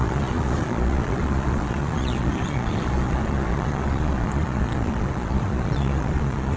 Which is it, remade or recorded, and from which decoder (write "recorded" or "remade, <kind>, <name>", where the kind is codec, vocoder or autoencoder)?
remade, vocoder, Vocos